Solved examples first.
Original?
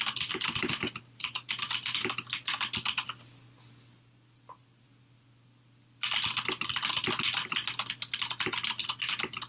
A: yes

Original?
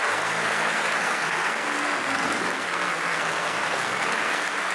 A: no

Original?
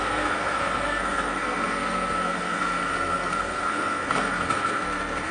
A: no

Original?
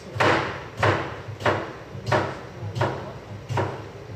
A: yes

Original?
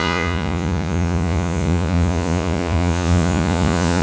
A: no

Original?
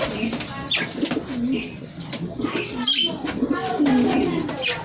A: yes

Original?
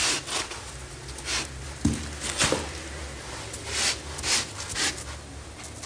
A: yes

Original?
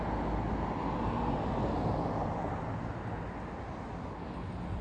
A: yes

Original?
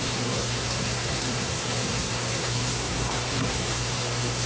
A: no